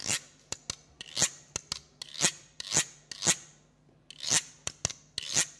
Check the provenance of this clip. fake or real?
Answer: real